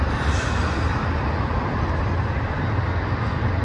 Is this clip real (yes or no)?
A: yes